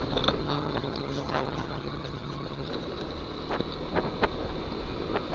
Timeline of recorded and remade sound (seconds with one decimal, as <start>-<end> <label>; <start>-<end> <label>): 0.0-0.4 recorded; 0.4-2.7 remade; 2.7-5.3 recorded

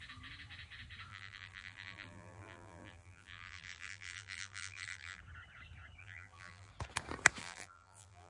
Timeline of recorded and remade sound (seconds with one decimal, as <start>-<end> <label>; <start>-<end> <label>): 0.0-1.1 recorded; 1.1-5.2 remade; 5.2-6.0 recorded; 6.0-6.7 remade; 6.7-7.4 recorded; 7.4-8.3 remade

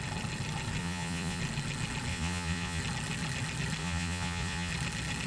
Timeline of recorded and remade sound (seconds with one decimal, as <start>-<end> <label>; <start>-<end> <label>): 0.0-0.8 recorded; 0.8-1.4 remade; 1.4-2.1 recorded; 2.1-2.8 remade; 2.8-3.8 recorded; 3.8-4.7 remade; 4.7-5.3 recorded

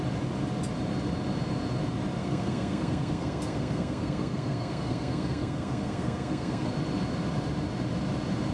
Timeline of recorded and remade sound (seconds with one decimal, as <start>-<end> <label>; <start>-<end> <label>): 0.0-2.2 recorded; 2.2-6.7 remade; 6.7-8.5 recorded

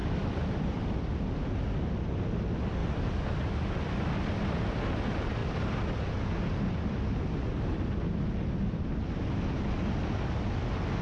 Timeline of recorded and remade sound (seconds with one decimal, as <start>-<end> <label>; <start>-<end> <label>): 0.0-0.8 remade; 0.8-2.8 recorded; 2.8-4.0 remade; 4.0-11.0 recorded

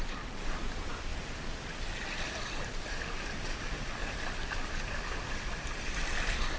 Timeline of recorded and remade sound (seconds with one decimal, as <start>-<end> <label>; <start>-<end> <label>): 0.0-6.6 recorded